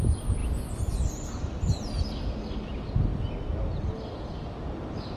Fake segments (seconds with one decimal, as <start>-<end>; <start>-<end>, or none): none